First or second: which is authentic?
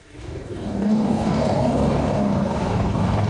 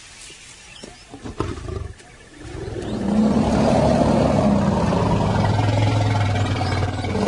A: second